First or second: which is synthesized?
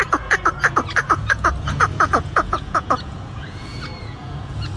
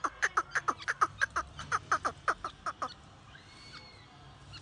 first